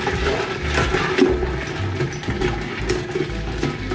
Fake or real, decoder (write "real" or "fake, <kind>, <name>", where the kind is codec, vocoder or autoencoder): real